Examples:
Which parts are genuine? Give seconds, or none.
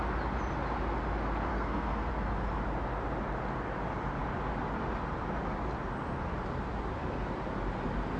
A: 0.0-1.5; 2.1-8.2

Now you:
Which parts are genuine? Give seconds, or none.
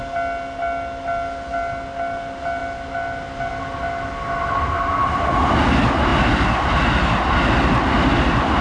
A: 0.0-8.6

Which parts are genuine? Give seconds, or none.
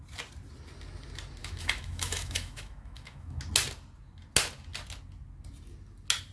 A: 0.0-1.4; 3.4-6.3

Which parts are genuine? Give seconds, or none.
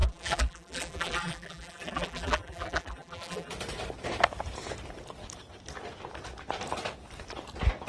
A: 3.5-7.9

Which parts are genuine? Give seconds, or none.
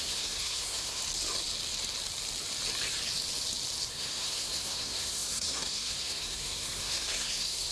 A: 1.0-3.9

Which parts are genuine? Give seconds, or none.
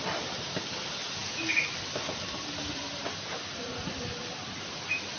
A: 0.0-5.2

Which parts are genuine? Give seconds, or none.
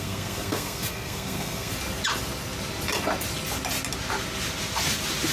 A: 1.7-5.3